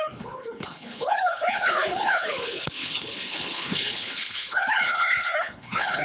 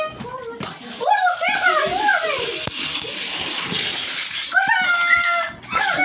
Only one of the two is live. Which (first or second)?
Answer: second